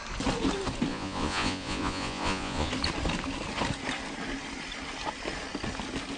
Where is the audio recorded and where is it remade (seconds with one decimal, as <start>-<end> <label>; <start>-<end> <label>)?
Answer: 0.0-0.9 recorded; 0.9-2.7 remade; 2.7-6.2 recorded